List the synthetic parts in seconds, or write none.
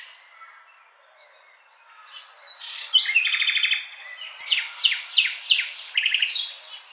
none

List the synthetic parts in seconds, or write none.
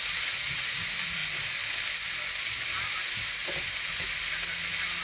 none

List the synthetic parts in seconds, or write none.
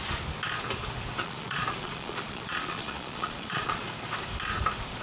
1.2-3.8 (vocoder, Vocos)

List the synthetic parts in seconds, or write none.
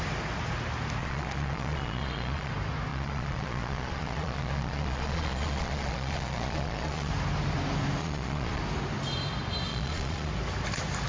1.0-2.5 (vocoder, Vocos); 2.9-7.1; 8.0-8.6; 9.7-10.3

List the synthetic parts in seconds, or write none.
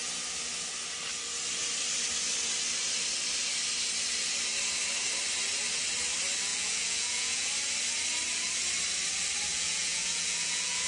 6.5-7.5 (vocoder, Vocos); 9.5-10.9